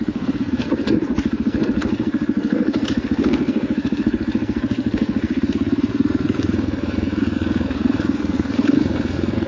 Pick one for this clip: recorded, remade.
remade